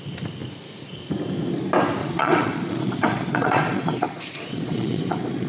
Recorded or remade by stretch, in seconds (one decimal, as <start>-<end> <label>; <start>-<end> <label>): 0.0-2.0 recorded; 2.0-5.5 remade